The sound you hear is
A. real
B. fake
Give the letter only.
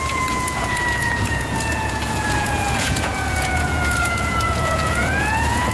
B